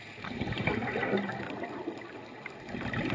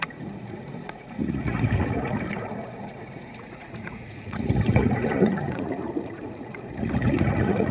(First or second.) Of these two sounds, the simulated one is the second